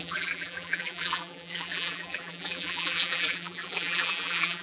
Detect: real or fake fake